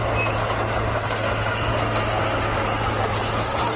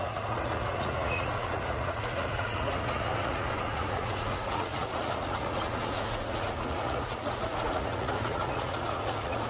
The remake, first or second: second